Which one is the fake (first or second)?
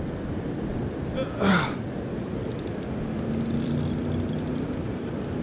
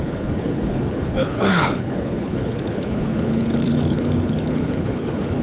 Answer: second